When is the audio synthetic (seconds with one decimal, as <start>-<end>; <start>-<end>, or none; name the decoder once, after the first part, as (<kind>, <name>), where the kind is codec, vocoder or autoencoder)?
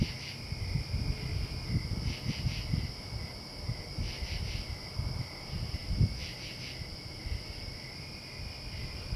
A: none